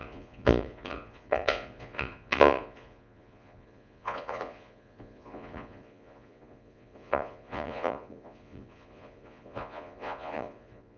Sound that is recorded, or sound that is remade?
remade